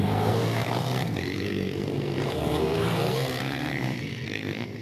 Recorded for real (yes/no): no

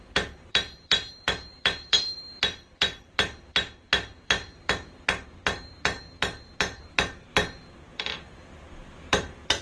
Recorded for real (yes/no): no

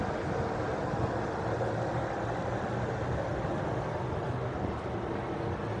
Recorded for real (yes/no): yes